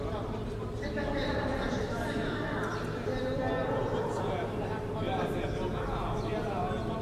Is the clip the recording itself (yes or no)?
yes